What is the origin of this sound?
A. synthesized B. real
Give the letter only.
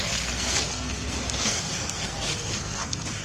A